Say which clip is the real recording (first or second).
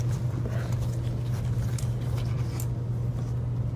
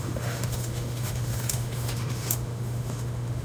first